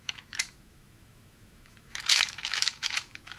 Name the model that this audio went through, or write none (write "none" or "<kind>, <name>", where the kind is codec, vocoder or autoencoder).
autoencoder, DAC-VAE